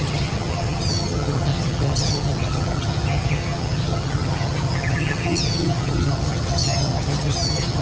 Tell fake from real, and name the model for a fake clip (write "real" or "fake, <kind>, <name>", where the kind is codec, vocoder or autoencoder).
fake, vocoder, HiFi-GAN